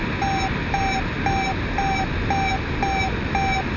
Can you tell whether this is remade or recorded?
recorded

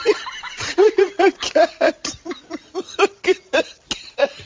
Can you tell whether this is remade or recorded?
recorded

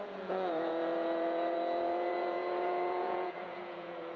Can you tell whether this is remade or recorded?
remade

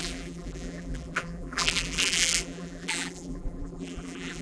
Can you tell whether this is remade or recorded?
remade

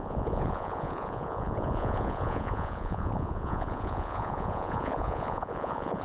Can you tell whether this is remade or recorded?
remade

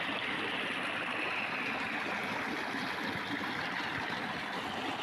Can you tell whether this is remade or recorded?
recorded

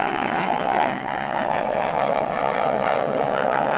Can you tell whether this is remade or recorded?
remade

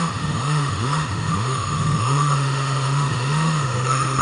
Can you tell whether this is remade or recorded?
remade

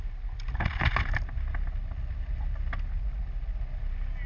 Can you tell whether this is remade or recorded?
recorded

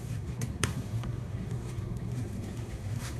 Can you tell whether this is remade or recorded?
remade